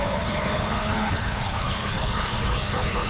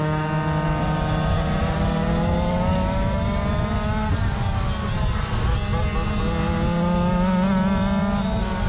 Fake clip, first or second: first